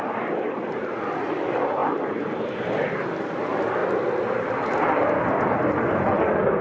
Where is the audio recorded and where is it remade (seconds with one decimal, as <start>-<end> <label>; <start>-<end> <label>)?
0.0-6.6 recorded